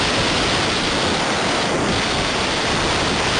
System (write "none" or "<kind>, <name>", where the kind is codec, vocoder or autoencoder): none